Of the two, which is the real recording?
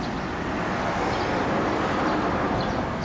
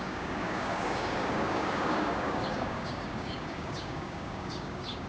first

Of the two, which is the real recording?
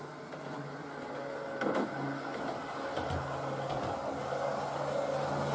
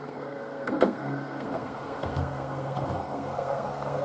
first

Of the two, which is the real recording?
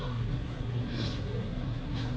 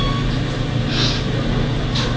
second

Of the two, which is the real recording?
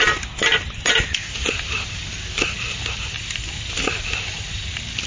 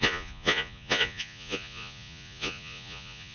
first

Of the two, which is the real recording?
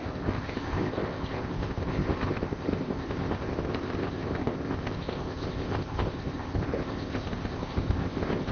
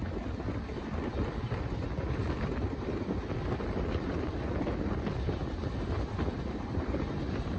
second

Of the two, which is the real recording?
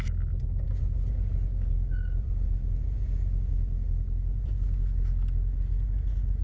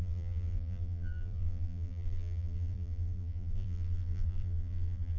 first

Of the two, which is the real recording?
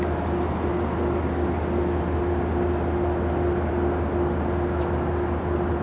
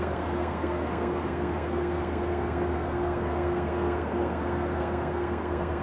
first